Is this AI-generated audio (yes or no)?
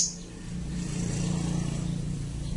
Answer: no